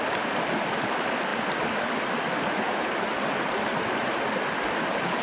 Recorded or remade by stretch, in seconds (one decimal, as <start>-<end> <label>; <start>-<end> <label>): 0.0-5.2 recorded